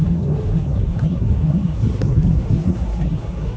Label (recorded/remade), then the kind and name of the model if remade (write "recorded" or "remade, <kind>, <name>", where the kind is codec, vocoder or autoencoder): remade, codec, SNAC